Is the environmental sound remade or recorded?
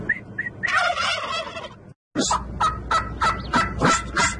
recorded